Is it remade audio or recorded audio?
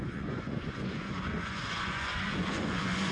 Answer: remade